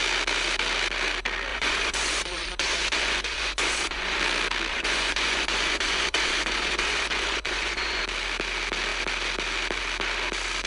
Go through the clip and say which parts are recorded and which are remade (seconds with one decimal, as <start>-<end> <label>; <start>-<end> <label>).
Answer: 0.0-1.5 recorded; 1.5-4.2 remade; 4.2-4.7 recorded; 4.7-8.0 remade; 8.0-10.7 recorded